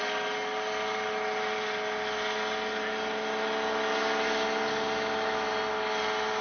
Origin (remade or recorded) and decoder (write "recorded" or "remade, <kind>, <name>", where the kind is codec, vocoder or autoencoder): recorded